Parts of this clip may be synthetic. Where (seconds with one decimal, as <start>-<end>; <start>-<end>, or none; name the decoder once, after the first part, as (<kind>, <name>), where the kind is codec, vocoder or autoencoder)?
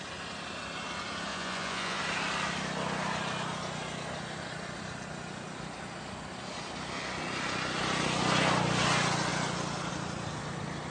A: 1.3-2.0 (vocoder, Vocos)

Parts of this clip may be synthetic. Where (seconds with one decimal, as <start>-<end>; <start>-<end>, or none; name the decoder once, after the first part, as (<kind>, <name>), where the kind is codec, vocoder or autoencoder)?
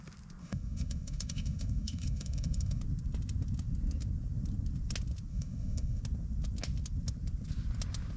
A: 0.4-2.8 (autoencoder, DAC-VAE); 5.3-6.0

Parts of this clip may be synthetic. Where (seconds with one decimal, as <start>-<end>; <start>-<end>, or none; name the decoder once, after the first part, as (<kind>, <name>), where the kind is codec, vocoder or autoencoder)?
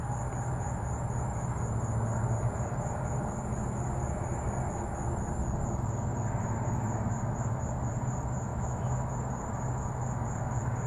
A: 8.5-9.1 (autoencoder, DAC-VAE)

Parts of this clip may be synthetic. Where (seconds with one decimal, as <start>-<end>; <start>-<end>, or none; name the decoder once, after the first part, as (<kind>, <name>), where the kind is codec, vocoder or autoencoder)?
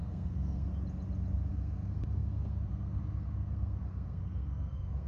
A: 0.0-0.7 (codec, SNAC); 1.5-5.1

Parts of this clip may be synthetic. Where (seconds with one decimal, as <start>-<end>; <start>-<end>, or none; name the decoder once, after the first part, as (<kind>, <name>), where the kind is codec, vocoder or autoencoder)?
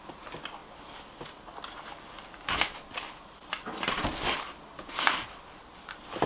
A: none